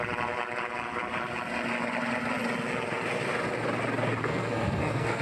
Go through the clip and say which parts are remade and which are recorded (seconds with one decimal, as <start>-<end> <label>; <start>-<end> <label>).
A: 0.0-4.2 recorded; 4.2-5.2 remade